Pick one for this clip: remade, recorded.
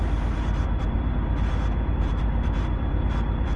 remade